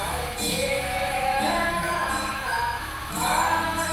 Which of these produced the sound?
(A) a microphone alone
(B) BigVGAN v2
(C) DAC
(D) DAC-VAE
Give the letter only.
D